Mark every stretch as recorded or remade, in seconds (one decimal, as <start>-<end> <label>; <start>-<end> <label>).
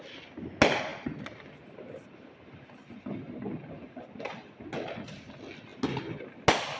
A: 0.0-6.8 recorded